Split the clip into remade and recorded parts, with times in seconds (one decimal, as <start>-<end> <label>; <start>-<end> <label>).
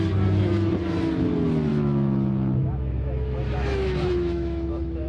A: 0.0-1.7 recorded; 1.7-5.1 remade